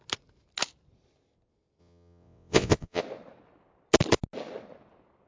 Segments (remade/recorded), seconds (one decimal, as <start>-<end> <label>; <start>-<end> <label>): 0.0-1.8 recorded; 1.8-3.0 remade; 3.0-5.3 recorded